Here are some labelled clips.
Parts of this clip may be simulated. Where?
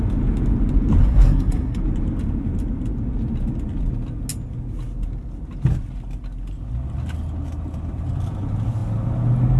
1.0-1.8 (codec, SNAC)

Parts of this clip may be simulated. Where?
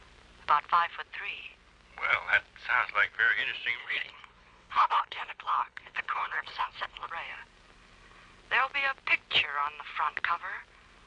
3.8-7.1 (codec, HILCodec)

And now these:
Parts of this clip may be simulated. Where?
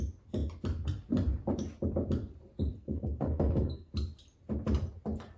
2.8-3.9 (codec, SNAC)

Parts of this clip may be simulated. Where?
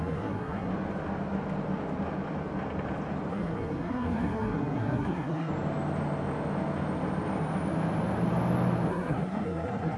0.0-0.7 (codec, SNAC); 3.3-5.5; 8.9-10.0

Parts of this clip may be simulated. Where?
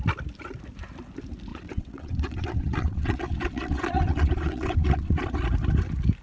1.5-5.2 (vocoder, WaveNeXt)